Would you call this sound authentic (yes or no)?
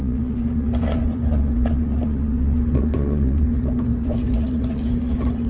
no